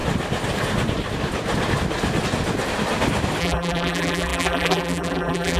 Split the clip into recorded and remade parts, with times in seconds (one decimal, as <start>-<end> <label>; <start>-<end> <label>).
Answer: 0.0-3.4 recorded; 3.4-5.6 remade